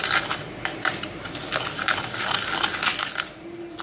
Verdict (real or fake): real